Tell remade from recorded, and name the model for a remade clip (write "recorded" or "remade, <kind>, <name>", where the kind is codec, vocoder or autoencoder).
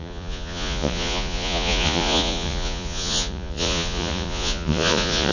remade, vocoder, Vocos